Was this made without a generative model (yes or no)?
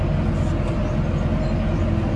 yes